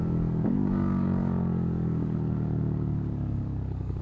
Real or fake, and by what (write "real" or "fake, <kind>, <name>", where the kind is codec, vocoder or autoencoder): fake, codec, DAC